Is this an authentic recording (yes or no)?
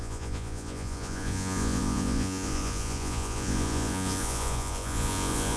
no